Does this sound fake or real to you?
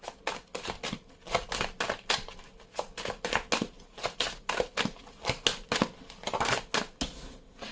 real